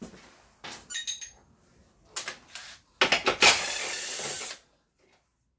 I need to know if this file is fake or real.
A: real